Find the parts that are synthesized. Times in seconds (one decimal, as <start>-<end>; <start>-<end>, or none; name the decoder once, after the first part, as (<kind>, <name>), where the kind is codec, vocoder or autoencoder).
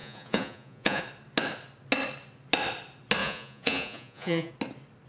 0.0-1.0 (vocoder, Vocos); 3.2-4.5